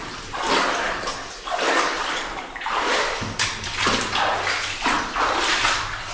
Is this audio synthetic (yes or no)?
no